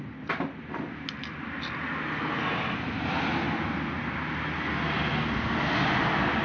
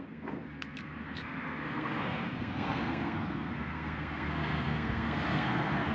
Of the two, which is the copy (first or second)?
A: second